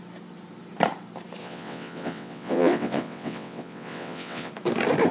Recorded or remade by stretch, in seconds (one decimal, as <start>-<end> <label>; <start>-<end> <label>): 0.0-1.4 recorded; 1.4-4.5 remade; 4.5-5.1 recorded